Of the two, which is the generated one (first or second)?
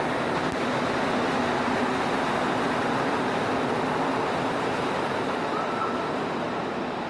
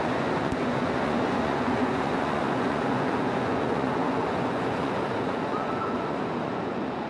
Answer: second